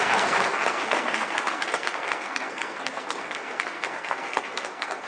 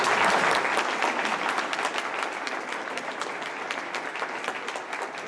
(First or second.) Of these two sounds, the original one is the second